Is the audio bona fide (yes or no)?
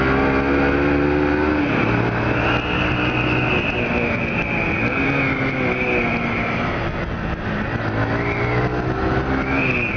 yes